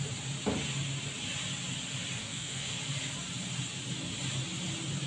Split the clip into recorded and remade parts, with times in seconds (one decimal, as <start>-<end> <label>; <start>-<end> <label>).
0.0-2.2 recorded; 2.2-2.8 remade; 2.8-5.1 recorded

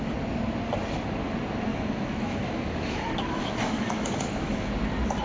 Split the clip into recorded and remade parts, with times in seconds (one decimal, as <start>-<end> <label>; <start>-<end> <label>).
0.0-1.7 recorded; 1.7-4.7 remade; 4.7-5.2 recorded

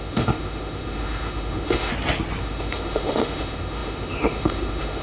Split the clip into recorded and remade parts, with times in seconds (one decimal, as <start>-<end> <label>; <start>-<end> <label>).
0.0-1.9 remade; 1.9-2.4 recorded; 2.4-5.0 remade

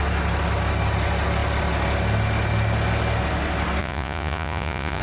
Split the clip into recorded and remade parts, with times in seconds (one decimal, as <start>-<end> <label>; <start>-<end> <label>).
0.0-3.8 recorded; 3.8-5.0 remade

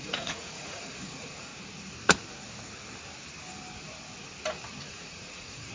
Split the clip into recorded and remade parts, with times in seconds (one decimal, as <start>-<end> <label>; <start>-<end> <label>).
0.0-1.5 remade; 1.5-4.9 recorded; 4.9-5.7 remade

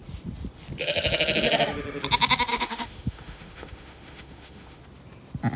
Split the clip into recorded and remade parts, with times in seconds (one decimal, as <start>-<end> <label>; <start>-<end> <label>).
0.0-2.5 recorded; 2.5-4.8 remade; 4.8-5.6 recorded

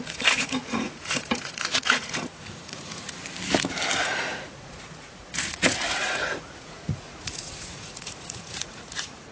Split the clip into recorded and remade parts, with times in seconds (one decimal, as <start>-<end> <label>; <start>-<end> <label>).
0.0-3.2 remade; 3.2-4.0 recorded; 4.0-9.3 remade

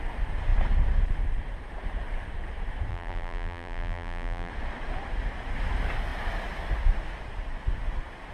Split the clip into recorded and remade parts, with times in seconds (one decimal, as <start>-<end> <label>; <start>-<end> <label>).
0.0-2.9 recorded; 2.9-4.5 remade; 4.5-8.3 recorded